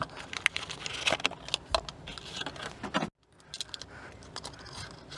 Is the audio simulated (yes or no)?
no